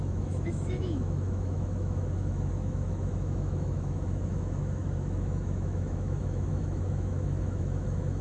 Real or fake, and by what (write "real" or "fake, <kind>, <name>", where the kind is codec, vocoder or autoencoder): fake, autoencoder, DAC-VAE